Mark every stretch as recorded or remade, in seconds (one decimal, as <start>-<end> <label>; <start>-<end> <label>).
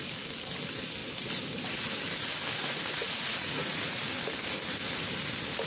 0.0-2.6 recorded; 2.6-4.0 remade; 4.0-5.7 recorded